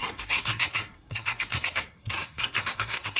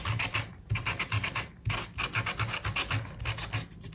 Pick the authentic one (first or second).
second